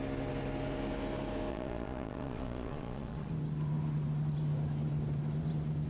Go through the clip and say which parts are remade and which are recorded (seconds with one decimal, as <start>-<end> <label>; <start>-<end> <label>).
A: 0.0-1.5 recorded; 1.5-3.3 remade; 3.3-5.9 recorded